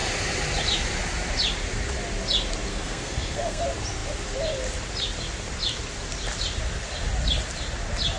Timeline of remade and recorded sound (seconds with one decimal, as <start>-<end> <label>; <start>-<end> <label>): 0.0-2.7 recorded; 2.7-3.6 remade; 3.6-8.2 recorded